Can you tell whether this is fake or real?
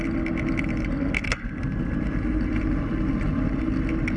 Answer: real